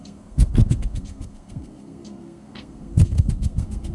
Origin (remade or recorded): remade